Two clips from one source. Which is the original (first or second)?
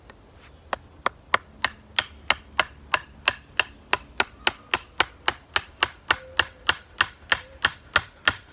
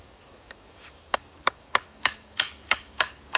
first